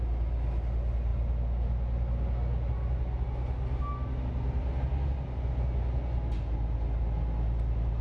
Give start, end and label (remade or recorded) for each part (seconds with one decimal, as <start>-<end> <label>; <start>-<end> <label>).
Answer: 0.0-8.0 recorded